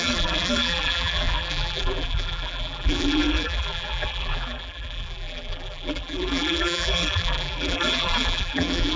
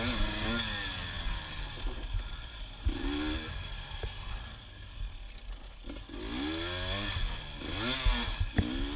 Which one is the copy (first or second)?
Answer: first